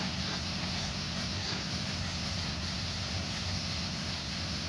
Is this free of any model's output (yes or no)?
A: no